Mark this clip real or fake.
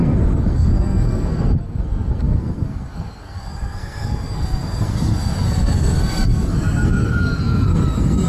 fake